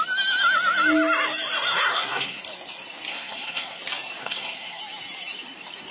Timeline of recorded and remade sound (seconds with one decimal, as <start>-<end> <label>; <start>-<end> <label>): 0.0-1.9 recorded; 1.9-2.4 remade; 2.4-3.1 recorded; 3.1-3.8 remade; 3.8-4.2 recorded; 4.2-4.8 remade; 4.8-5.9 recorded